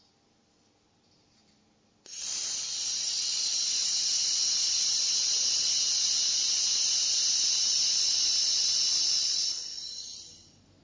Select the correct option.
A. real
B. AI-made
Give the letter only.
A